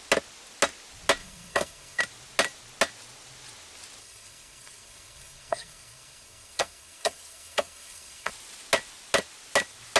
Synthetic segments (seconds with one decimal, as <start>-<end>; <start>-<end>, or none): 1.2-2.0; 4.0-8.3